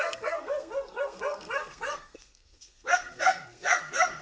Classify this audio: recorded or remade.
remade